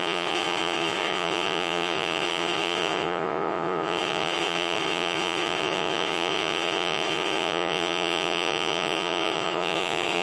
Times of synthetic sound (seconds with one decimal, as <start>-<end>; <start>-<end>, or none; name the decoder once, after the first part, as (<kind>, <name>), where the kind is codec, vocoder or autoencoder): 0.0-10.2 (vocoder, Vocos)